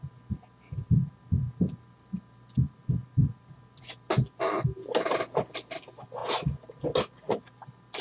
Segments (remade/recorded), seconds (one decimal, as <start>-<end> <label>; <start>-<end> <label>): 0.0-8.0 recorded